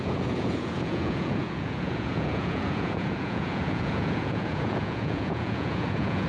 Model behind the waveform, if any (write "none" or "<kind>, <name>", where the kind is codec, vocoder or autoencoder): vocoder, Vocos